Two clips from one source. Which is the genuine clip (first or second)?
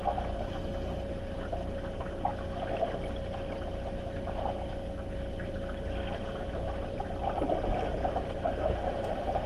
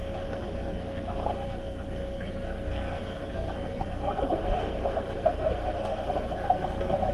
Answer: first